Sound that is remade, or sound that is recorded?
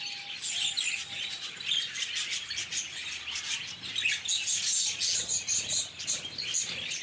recorded